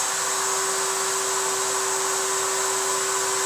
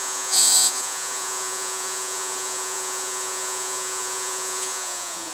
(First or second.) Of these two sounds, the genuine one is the first